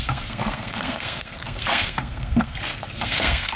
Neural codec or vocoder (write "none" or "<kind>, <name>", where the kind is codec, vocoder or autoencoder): codec, SNAC